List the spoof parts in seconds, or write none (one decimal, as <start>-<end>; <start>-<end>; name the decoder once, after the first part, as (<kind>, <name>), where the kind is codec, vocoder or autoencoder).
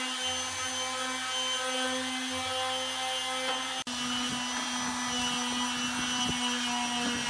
none